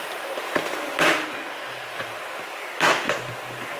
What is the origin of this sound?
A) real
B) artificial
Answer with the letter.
A